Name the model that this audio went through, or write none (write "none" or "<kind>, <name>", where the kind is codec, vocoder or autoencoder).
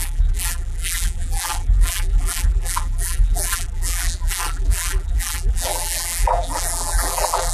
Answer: vocoder, BigVGAN v2